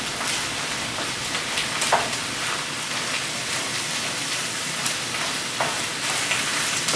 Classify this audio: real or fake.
fake